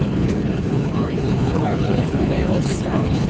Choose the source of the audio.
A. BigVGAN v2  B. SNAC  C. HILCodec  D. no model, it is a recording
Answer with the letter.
C